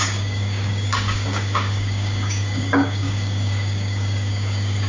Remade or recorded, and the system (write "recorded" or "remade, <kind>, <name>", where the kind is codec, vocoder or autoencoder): remade, codec, DAC